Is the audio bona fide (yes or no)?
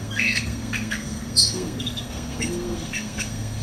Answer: no